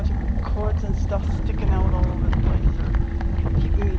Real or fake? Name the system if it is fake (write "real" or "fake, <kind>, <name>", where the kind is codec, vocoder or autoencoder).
real